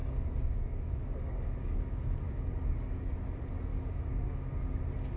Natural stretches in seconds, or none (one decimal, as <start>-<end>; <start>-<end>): 3.1-3.7; 4.8-5.2

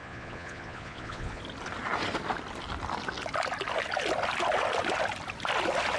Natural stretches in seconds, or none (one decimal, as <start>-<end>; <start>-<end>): 1.4-6.0

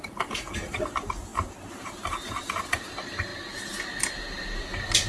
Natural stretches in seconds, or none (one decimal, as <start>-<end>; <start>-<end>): 3.3-4.2

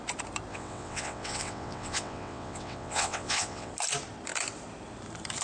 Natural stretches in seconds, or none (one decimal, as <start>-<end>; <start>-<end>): 0.0-0.5; 3.7-5.4

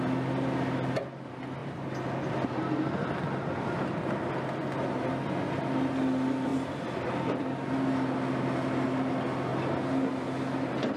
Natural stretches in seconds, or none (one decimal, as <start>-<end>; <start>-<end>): 0.0-11.0

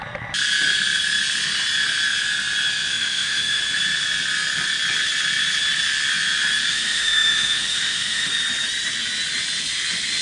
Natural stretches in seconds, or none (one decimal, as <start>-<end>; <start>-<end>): 0.0-2.9; 3.6-6.7; 8.3-10.2

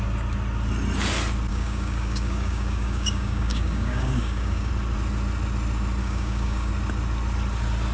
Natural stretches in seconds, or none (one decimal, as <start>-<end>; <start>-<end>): 0.0-1.5; 4.7-6.0; 6.7-7.9